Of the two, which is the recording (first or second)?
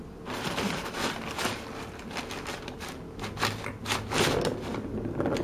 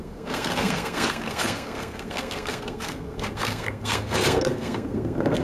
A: first